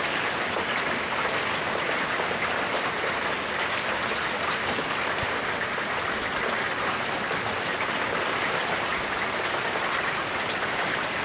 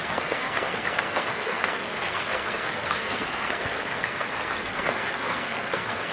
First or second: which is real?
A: first